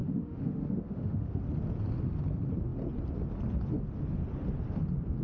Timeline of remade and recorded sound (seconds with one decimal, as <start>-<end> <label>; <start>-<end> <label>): 0.0-1.4 remade; 1.4-5.2 recorded